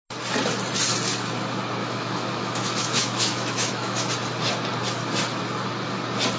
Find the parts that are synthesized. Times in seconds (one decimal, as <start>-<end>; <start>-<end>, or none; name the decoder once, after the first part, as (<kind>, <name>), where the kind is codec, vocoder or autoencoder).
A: 1.8-4.1 (autoencoder, DAC-VAE)